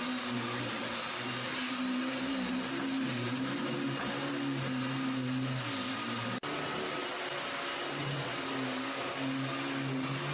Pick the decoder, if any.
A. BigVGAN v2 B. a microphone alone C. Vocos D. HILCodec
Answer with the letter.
B